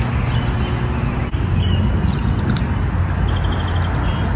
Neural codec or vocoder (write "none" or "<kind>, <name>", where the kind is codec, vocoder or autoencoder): none